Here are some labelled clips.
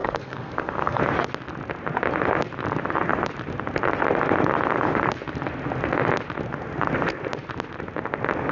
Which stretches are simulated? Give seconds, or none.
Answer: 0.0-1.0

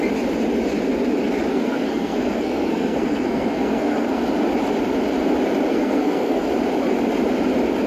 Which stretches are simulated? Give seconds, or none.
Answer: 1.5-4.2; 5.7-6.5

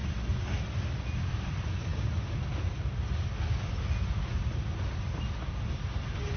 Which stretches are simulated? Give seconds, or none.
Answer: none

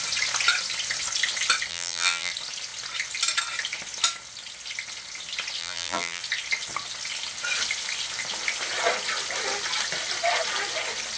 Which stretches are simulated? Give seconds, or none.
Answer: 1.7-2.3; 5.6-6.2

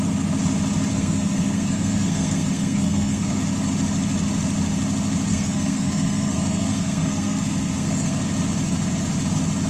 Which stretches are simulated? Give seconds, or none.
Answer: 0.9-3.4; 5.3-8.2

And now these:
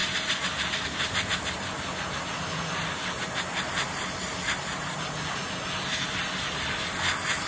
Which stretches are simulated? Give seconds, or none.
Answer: none

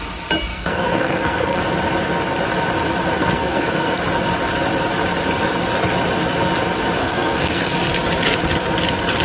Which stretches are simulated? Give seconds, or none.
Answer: 0.5-1.6; 3.2-4.0; 7.0-7.7